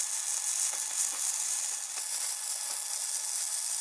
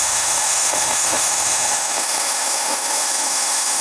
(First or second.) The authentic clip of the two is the first